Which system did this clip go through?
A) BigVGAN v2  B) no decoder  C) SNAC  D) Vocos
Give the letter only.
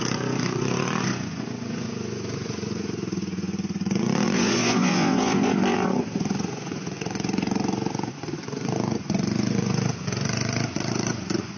D